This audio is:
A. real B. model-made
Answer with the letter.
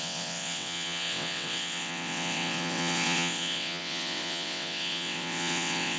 B